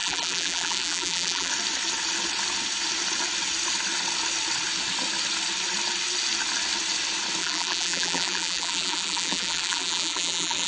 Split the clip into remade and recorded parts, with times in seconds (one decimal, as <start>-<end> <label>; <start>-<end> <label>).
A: 0.0-1.5 remade; 1.5-7.4 recorded; 7.4-10.7 remade